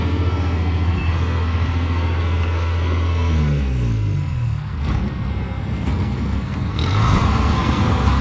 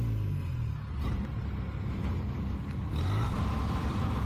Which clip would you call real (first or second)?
second